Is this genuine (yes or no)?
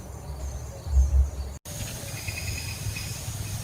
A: yes